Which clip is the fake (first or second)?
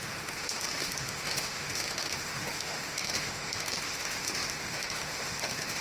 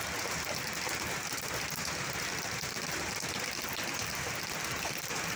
first